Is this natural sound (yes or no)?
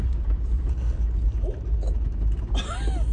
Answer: yes